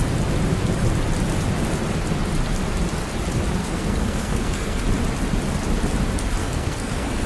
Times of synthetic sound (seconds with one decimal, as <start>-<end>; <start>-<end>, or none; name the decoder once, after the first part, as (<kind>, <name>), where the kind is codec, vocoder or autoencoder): 3.6-4.8 (codec, SNAC); 6.4-7.3